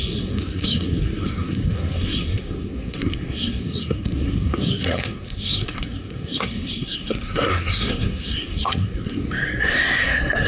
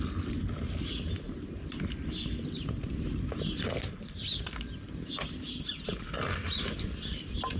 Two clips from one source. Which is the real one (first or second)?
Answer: second